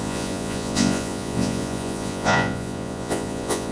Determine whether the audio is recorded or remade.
remade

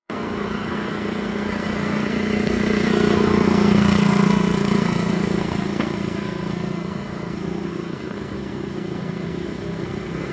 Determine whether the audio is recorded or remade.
remade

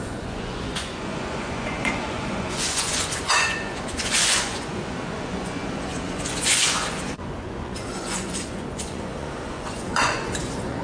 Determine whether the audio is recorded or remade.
remade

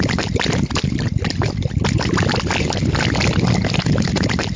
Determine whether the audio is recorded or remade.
recorded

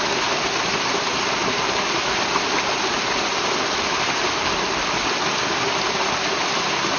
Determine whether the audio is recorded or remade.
recorded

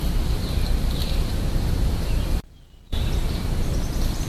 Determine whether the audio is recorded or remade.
remade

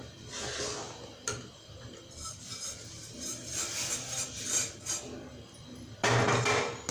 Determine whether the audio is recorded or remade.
recorded